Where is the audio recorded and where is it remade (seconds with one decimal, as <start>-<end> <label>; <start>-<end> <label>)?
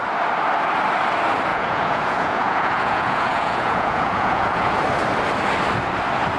0.0-1.5 recorded; 1.5-4.8 remade; 4.8-6.4 recorded